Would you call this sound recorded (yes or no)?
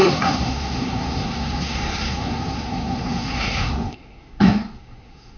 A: no